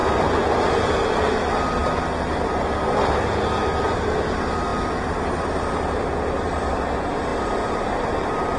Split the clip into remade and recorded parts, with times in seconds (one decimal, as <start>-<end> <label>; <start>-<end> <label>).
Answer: 0.0-4.7 recorded; 4.7-6.8 remade; 6.8-7.3 recorded; 7.3-8.6 remade